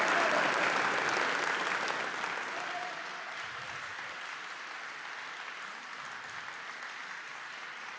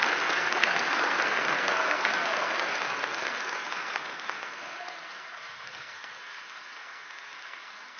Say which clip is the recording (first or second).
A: first